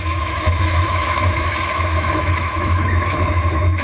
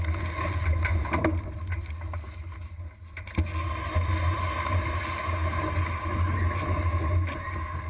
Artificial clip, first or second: first